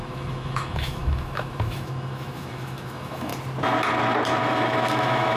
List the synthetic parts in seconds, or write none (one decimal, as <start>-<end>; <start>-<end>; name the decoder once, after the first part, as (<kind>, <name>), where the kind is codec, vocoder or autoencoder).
0.0-3.3 (autoencoder, DAC-VAE); 4.4-5.4